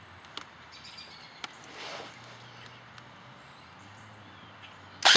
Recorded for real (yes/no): yes